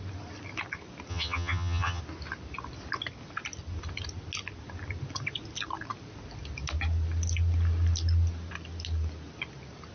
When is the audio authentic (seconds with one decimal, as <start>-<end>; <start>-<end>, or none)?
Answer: 0.0-1.1; 2.0-9.9